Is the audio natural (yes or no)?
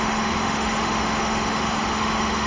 no